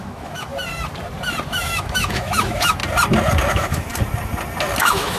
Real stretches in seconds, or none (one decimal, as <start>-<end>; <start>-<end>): 0.5-1.5; 2.8-3.5; 3.9-4.8